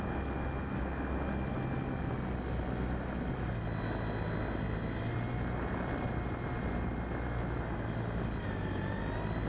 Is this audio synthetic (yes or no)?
no